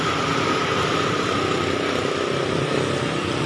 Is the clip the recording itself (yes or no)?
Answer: yes